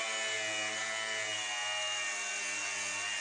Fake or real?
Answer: real